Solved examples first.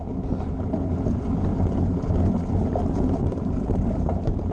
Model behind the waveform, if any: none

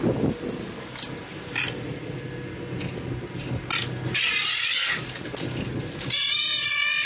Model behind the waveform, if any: none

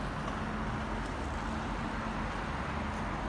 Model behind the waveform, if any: none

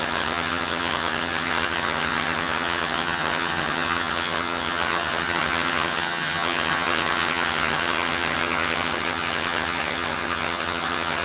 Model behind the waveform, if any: vocoder, HiFi-GAN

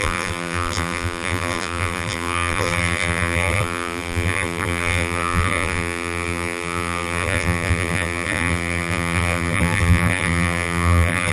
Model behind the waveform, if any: vocoder, BigVGAN v2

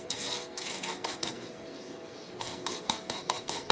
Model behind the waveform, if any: codec, SNAC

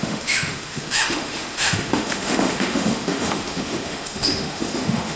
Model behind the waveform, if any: autoencoder, DAC-VAE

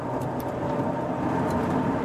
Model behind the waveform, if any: none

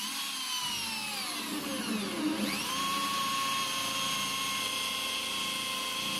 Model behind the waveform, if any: none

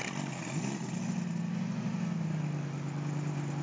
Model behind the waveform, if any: none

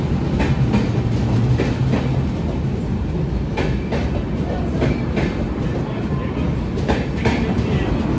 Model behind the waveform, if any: none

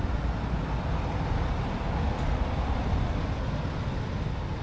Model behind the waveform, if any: none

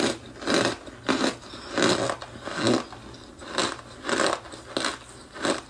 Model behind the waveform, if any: none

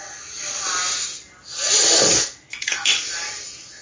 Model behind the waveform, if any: none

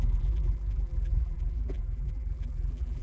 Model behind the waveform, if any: vocoder, BigVGAN v2